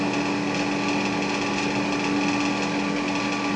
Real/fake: real